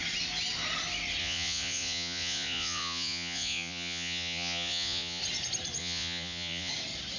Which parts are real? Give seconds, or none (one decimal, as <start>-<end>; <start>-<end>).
0.0-1.2; 5.2-5.8; 6.7-7.2